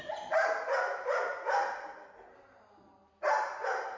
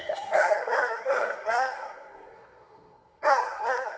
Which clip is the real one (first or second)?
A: first